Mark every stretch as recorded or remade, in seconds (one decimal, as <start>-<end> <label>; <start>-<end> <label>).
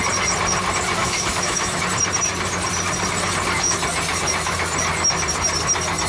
0.0-1.0 recorded; 1.0-1.8 remade; 1.8-6.1 recorded